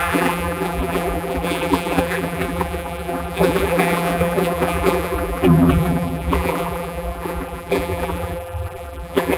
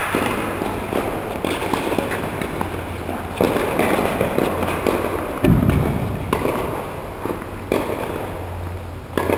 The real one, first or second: second